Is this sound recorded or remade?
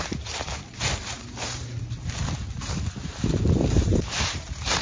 remade